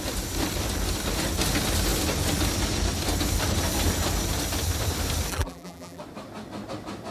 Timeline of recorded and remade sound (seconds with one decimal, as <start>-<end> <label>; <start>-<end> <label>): 0.0-5.3 recorded; 5.3-6.0 remade; 6.0-7.1 recorded